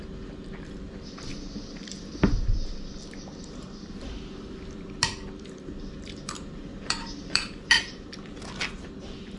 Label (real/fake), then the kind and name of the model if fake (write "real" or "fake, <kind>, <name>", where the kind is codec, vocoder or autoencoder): fake, vocoder, BigVGAN v2